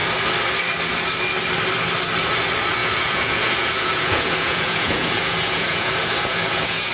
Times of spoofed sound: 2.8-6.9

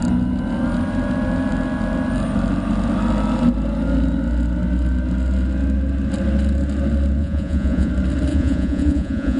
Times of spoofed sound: 7.2-7.9; 8.3-9.4

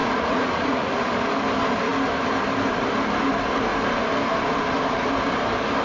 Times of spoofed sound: 0.0-0.9

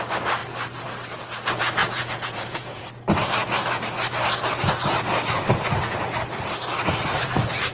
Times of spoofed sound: 1.8-2.8

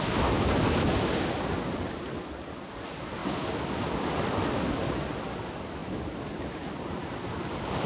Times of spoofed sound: none

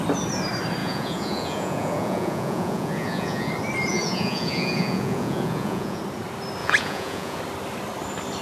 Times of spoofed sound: 0.8-3.5; 3.9-6.0; 6.6-7.4

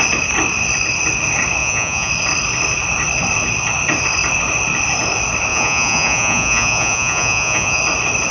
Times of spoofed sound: 1.6-2.1; 5.5-7.8